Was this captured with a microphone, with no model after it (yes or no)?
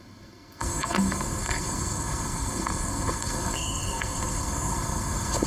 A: no